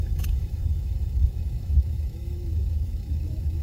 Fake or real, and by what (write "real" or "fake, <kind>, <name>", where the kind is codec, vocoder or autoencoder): fake, autoencoder, DAC-VAE